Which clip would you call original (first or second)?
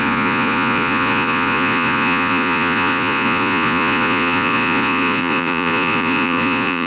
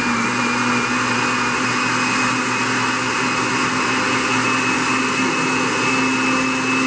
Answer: second